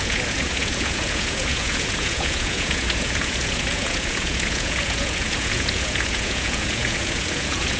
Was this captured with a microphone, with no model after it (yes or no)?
no